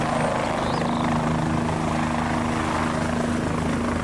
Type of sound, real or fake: real